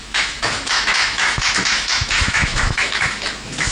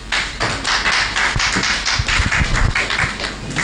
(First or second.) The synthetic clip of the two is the first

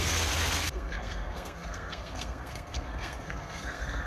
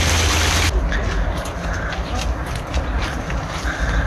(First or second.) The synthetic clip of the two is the first